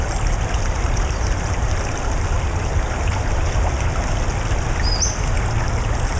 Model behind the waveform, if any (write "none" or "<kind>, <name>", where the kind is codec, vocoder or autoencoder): none